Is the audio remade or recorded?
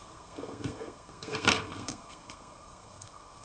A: remade